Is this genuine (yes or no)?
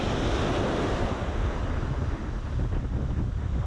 yes